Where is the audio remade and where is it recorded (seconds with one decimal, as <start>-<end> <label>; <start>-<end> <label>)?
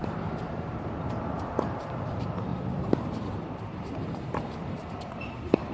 0.0-0.5 recorded; 0.5-5.7 remade